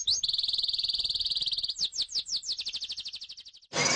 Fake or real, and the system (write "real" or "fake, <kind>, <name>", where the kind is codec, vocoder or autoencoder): real